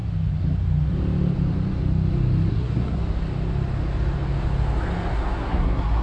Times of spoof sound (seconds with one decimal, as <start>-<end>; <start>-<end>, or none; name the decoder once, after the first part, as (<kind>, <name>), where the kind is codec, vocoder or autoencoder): 2.5-3.0 (codec, SNAC); 5.1-6.0

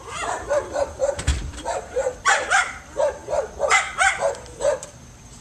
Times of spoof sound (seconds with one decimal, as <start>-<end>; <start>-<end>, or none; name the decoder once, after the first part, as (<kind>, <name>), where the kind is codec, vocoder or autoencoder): 0.0-3.2 (vocoder, BigVGAN v2); 4.6-5.4

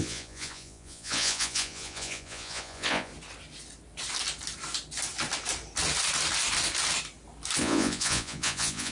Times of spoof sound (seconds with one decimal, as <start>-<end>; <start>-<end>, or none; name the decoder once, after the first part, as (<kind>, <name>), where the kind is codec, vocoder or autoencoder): 0.0-3.1 (vocoder, Vocos); 7.6-8.9

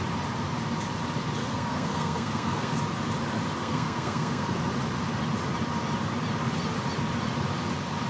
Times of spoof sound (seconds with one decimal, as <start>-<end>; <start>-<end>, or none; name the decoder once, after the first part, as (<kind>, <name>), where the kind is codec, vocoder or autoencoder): 1.4-2.8 (codec, SNAC); 3.6-4.7

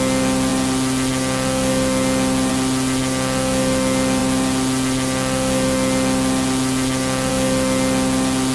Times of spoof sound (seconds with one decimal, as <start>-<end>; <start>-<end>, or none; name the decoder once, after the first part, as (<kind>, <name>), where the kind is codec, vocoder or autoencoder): none

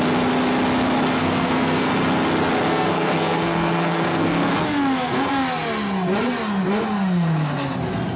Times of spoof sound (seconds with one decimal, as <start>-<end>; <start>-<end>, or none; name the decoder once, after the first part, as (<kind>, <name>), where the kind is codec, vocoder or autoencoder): 1.2-1.9 (codec, SNAC); 2.7-4.5

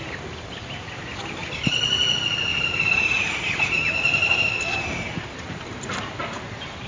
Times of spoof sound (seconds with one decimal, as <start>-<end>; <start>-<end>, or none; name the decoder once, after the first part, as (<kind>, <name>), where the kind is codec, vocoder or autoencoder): 2.5-6.9 (vocoder, BigVGAN v2)

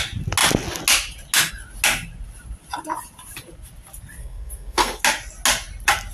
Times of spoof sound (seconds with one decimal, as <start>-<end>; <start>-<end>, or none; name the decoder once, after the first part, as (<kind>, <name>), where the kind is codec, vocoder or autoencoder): 4.2-5.0 (codec, SNAC)